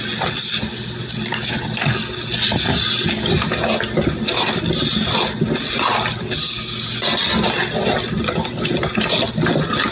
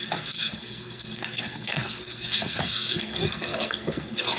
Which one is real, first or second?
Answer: first